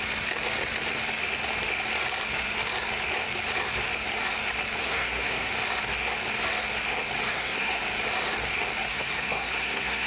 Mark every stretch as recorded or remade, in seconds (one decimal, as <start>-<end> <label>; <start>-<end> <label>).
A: 0.0-4.8 recorded; 4.8-5.5 remade; 5.5-7.3 recorded; 7.3-7.8 remade; 7.8-8.9 recorded; 8.9-10.1 remade